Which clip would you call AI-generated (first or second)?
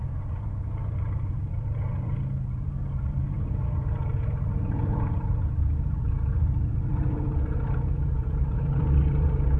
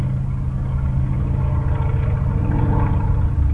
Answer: first